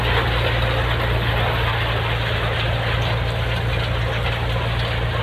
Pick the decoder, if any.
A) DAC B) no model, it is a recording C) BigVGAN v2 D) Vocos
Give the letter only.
B